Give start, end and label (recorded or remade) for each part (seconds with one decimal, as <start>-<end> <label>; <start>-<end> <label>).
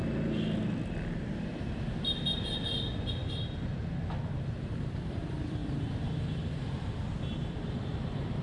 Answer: 0.0-3.3 recorded; 3.3-3.7 remade; 3.7-5.1 recorded; 5.1-8.4 remade